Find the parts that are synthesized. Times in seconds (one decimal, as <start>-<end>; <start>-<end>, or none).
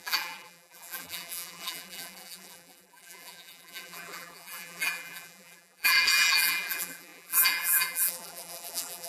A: 0.0-9.1